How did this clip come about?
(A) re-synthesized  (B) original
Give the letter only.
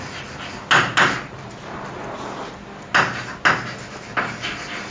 B